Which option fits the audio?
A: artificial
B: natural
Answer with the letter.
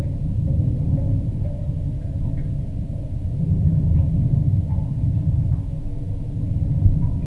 B